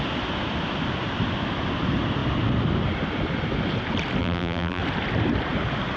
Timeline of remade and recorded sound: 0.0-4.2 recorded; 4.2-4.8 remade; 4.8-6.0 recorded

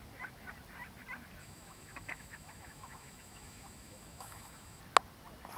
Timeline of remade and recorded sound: 0.0-1.4 recorded; 1.4-4.8 remade; 4.8-5.6 recorded